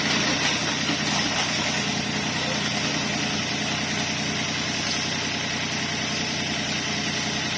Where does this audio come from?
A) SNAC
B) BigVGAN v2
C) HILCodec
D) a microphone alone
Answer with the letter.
D